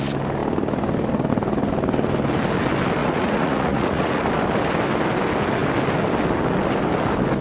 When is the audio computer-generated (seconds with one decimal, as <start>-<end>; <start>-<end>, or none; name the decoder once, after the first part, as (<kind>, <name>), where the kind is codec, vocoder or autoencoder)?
3.0-4.2 (vocoder, Vocos)